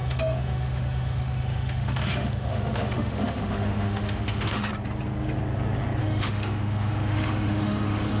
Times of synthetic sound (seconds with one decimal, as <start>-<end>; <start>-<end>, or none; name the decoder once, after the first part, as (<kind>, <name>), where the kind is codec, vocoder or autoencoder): 0.0-4.7 (autoencoder, DAC-VAE); 6.0-8.2